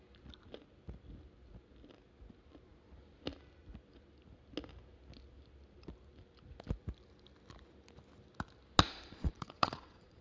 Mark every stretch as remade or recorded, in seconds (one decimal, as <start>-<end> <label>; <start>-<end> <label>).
0.0-8.9 recorded; 8.9-10.2 remade